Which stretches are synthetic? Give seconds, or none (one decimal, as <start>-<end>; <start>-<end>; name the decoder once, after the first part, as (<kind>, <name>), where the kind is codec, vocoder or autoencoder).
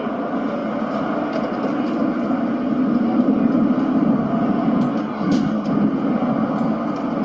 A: 5.0-5.7 (codec, SNAC)